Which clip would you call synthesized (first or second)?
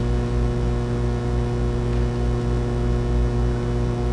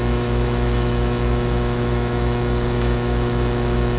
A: second